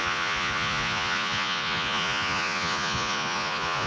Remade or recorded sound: remade